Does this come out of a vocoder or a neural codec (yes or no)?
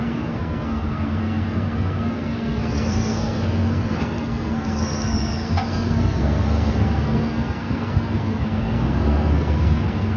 yes